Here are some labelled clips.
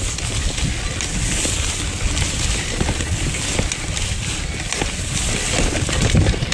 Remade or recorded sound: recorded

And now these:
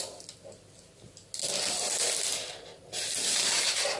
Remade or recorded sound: recorded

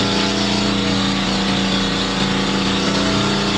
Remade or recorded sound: recorded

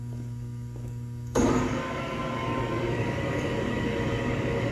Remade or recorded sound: remade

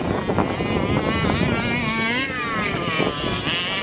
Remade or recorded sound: recorded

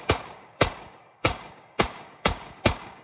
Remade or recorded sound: remade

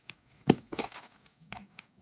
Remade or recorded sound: remade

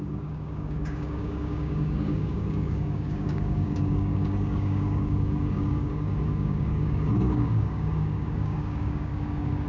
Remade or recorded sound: remade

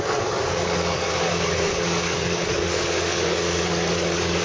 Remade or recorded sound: remade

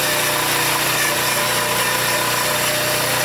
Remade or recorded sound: recorded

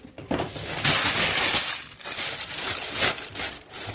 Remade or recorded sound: recorded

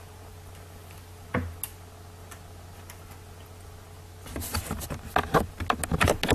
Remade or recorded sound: recorded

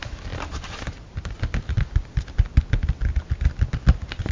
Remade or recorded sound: recorded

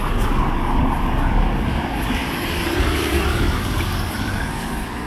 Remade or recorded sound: remade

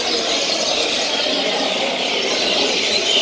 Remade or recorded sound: recorded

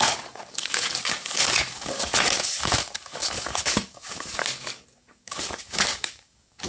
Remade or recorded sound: remade